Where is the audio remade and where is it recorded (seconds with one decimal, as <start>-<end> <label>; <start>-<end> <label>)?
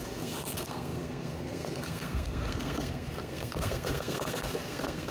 0.0-5.1 remade